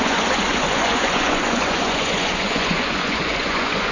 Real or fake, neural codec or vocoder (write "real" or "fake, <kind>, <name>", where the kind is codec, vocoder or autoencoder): fake, vocoder, Vocos